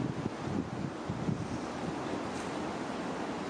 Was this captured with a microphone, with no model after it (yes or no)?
yes